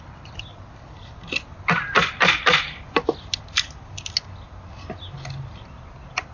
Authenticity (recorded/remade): recorded